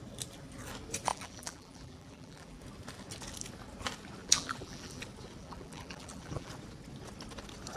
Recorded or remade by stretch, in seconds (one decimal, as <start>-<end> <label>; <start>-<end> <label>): 0.0-1.1 recorded; 1.1-2.6 remade; 2.6-4.2 recorded; 4.2-5.0 remade; 5.0-5.4 recorded; 5.4-6.5 remade; 6.5-7.8 recorded